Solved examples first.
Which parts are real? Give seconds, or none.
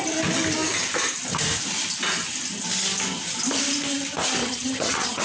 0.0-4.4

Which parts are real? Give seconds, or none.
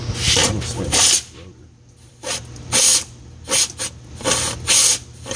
0.0-5.4